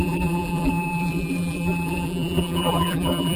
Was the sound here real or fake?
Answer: fake